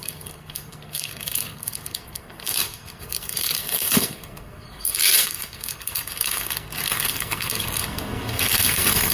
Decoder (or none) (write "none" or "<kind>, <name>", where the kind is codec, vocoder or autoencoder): codec, SNAC